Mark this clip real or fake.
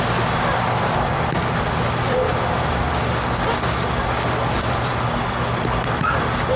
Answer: real